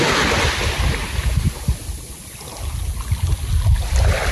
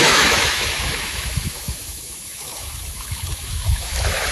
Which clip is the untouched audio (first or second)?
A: first